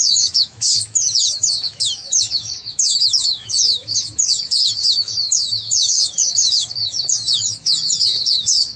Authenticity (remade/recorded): remade